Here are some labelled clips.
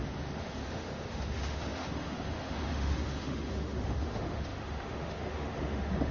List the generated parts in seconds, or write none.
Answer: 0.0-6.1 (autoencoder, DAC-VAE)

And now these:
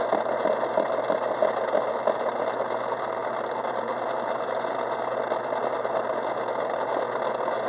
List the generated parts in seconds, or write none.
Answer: none